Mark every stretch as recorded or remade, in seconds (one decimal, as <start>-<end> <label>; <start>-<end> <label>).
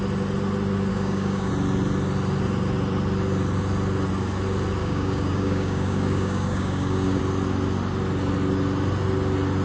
0.0-0.9 recorded; 0.9-1.5 remade; 1.5-4.8 recorded; 4.8-7.2 remade; 7.2-9.6 recorded